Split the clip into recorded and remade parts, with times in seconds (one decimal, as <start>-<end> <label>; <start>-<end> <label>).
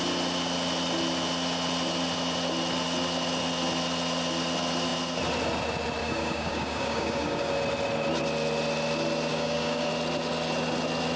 0.0-6.0 recorded; 6.0-7.5 remade; 7.5-9.3 recorded; 9.3-9.9 remade; 9.9-11.2 recorded